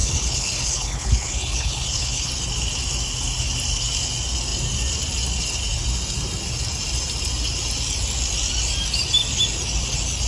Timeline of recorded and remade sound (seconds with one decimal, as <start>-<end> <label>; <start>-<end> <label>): 0.0-2.3 remade; 2.3-10.3 recorded